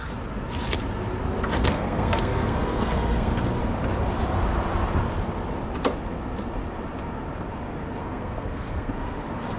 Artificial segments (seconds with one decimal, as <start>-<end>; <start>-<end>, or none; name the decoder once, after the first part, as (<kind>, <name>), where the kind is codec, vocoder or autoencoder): 1.6-3.3 (codec, SNAC); 8.0-8.9